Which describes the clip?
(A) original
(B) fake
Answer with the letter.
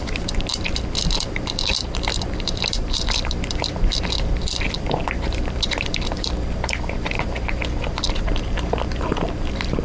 B